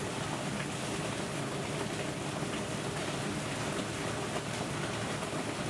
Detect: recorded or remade recorded